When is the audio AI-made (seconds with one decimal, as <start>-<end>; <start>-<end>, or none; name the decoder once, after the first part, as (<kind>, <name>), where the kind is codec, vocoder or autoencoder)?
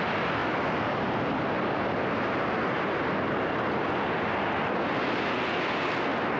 none